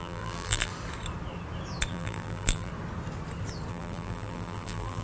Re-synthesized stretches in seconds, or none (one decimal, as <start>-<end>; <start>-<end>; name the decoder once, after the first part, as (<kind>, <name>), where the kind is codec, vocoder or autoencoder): 0.0-0.7 (vocoder, BigVGAN v2); 1.9-2.7; 3.7-5.0